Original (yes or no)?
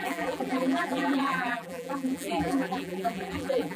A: no